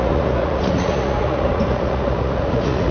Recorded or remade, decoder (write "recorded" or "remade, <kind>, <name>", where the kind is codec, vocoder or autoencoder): remade, vocoder, Vocos